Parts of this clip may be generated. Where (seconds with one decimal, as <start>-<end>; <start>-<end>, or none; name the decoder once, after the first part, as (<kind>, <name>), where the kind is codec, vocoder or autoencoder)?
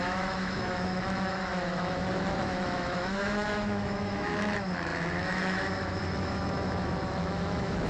0.0-7.9 (autoencoder, DAC-VAE)